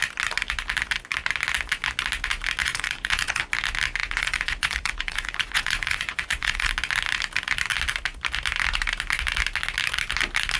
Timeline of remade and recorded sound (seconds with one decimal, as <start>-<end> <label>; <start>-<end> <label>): 0.0-2.6 recorded; 2.6-3.4 remade; 3.4-4.0 recorded; 4.0-6.7 remade; 6.7-10.6 recorded